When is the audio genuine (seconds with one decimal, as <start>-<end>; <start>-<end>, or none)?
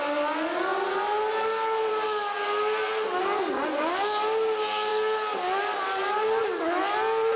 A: 0.0-7.4